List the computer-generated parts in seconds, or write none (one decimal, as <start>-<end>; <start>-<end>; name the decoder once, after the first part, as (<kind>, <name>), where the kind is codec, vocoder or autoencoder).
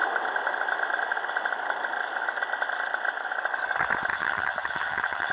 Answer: 4.1-5.3 (vocoder, HiFi-GAN)